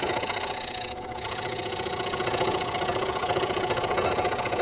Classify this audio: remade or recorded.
remade